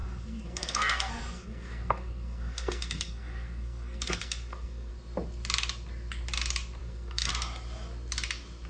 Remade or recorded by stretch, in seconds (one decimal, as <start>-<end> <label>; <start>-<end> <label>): 0.0-4.9 remade; 4.9-6.8 recorded; 6.8-7.3 remade; 7.3-8.7 recorded